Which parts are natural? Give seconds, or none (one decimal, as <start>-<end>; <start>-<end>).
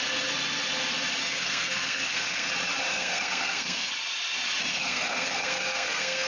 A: 0.0-1.2; 2.5-2.9; 3.9-4.7